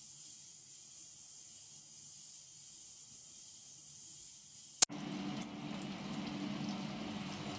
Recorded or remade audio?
recorded